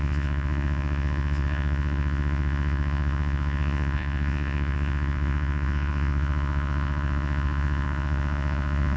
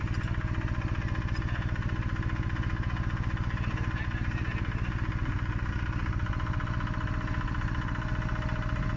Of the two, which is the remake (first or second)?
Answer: first